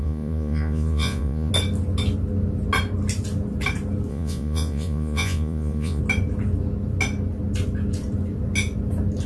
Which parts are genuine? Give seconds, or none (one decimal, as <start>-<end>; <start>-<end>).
1.5-4.1; 6.0-9.3